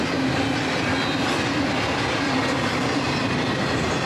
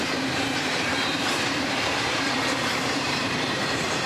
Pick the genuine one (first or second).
first